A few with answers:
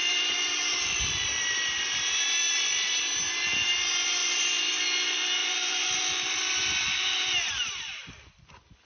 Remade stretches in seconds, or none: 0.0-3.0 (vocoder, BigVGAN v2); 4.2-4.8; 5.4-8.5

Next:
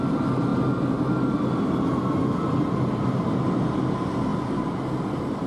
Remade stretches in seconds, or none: none

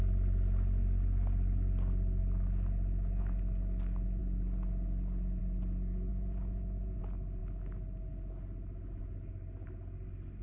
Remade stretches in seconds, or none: 6.1-7.0 (vocoder, Vocos)

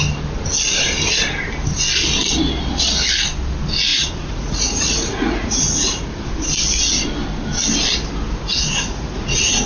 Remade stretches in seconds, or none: 3.9-6.3 (vocoder, Vocos); 8.5-9.7

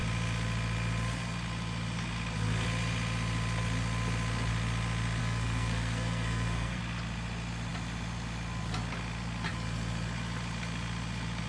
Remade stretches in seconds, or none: 5.2-6.8 (codec, SNAC)

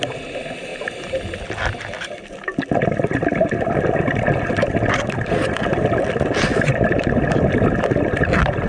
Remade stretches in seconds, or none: 6.5-8.7 (vocoder, BigVGAN v2)

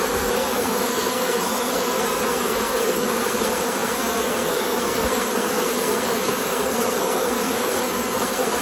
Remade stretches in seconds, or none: 0.0-8.6 (codec, SNAC)

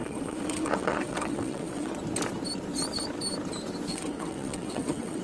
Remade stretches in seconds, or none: 0.0-1.9 (vocoder, WaveNeXt); 3.9-5.2